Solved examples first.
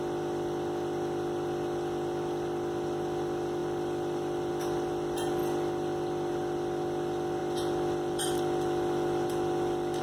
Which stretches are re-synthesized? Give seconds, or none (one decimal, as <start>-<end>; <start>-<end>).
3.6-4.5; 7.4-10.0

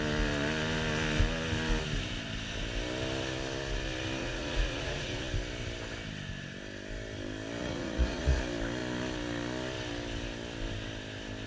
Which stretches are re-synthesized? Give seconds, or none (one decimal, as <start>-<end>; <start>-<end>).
4.2-5.2; 7.6-8.4

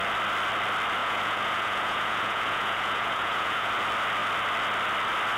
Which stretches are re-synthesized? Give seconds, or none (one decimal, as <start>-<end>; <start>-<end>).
1.0-3.7

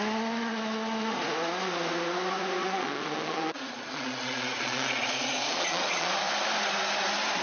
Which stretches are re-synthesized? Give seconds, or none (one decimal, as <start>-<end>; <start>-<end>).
2.6-6.1